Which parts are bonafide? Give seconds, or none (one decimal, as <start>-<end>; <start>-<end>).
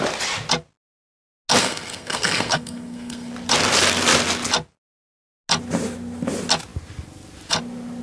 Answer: 0.0-1.6; 3.3-8.0